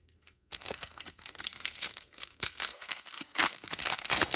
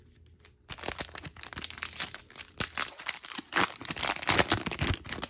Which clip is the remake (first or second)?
first